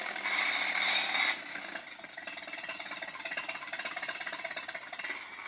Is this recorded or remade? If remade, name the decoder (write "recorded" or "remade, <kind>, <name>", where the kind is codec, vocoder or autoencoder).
recorded